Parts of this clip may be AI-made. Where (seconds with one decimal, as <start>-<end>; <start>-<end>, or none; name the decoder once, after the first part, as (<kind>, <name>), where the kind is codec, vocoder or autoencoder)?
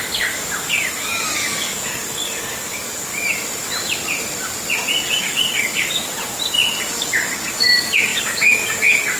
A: 0.0-3.1 (codec, DAC); 5.2-6.1; 6.9-9.2